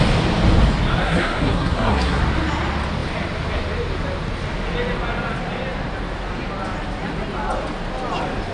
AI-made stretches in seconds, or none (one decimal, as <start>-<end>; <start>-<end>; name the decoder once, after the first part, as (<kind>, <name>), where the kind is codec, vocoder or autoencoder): 1.0-2.2 (codec, SNAC)